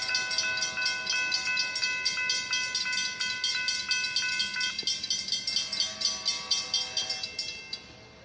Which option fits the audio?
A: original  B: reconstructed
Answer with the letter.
A